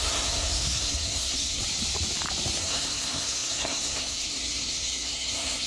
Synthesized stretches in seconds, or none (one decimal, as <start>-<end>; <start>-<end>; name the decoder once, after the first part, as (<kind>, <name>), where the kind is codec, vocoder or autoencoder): 0.0-1.6 (codec, SNAC); 2.6-5.7